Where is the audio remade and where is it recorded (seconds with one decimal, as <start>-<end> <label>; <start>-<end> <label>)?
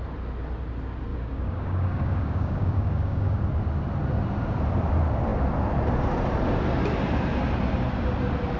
0.0-1.1 recorded; 1.1-3.4 remade; 3.4-8.6 recorded